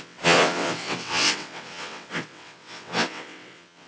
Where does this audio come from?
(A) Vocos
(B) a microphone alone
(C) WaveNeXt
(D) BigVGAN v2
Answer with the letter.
C